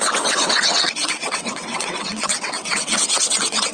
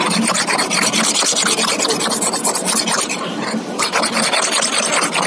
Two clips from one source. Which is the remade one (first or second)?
first